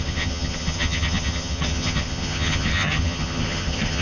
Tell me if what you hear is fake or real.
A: fake